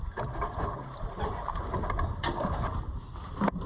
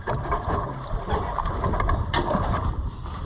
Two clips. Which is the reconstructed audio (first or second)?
second